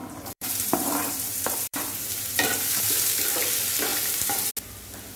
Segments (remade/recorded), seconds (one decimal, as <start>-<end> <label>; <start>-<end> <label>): 0.0-3.1 remade; 3.1-3.9 recorded; 3.9-4.5 remade; 4.5-5.2 recorded